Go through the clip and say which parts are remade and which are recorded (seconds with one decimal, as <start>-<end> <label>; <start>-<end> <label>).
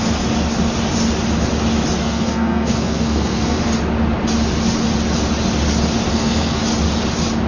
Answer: 0.0-2.0 recorded; 2.0-3.6 remade; 3.6-6.1 recorded; 6.1-6.6 remade; 6.6-7.5 recorded